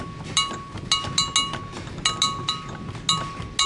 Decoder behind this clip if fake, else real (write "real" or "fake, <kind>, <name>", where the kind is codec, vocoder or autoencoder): real